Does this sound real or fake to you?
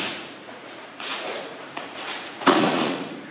fake